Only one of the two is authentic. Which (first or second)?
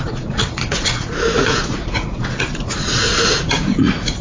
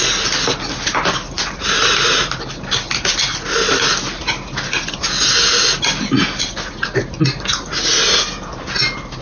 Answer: second